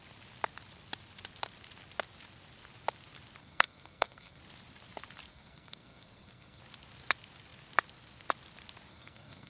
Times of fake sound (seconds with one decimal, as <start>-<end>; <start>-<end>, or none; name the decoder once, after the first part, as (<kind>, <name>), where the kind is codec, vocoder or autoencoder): 3.4-4.4 (codec, SNAC); 5.3-6.6; 8.9-9.5

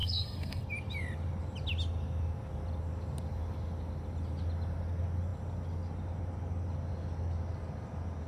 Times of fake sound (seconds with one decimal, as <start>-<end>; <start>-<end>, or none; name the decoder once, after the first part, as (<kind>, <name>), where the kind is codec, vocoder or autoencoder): 0.0-0.6 (codec, SNAC)

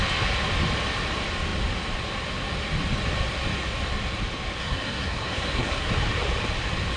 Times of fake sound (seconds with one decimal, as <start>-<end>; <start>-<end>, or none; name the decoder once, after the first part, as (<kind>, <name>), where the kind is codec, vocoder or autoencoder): 4.6-5.9 (codec, SNAC)

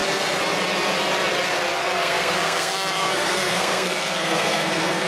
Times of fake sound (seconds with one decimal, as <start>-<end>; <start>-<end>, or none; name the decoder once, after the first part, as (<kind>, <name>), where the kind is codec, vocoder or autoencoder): 1.8-5.1 (codec, SNAC)

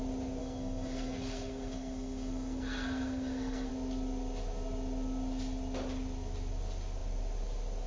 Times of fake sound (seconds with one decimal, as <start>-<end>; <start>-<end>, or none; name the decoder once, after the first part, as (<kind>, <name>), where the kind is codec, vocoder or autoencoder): 0.4-3.7 (codec, SNAC)

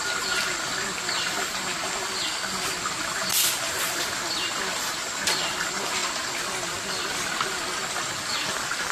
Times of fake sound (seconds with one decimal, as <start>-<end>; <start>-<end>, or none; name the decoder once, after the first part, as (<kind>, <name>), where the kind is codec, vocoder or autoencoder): none

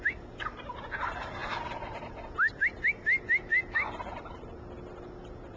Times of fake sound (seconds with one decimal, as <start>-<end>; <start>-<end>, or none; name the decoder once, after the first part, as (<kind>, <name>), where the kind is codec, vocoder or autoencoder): none